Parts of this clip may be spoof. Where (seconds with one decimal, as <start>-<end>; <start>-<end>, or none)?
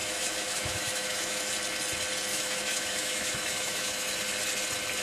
0.0-1.5; 2.3-4.1